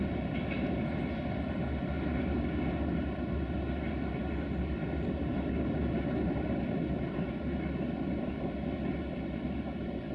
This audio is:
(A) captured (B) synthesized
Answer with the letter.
A